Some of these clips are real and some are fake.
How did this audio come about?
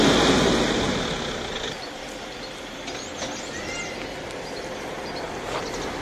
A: real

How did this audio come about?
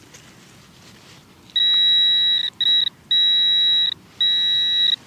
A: real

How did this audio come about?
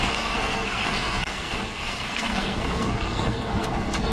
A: fake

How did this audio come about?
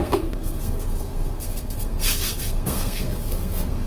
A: fake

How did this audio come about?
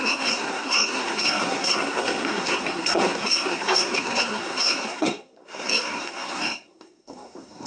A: fake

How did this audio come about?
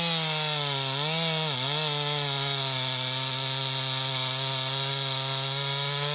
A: real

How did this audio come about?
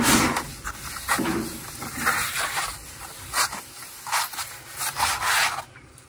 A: real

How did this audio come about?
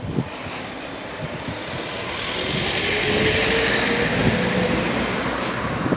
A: real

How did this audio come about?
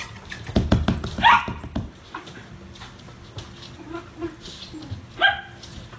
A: real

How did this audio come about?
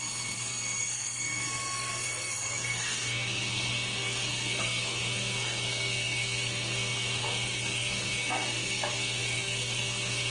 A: fake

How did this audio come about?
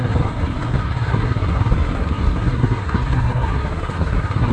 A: fake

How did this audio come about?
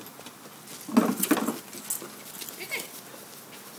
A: real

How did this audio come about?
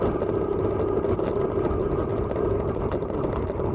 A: real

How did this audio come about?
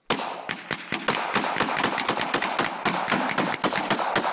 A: real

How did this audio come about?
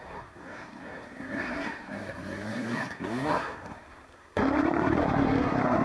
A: fake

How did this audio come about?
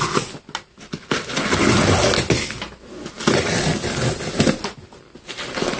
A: real